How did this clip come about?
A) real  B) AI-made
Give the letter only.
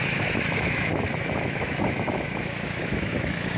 B